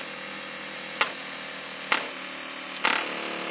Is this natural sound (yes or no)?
yes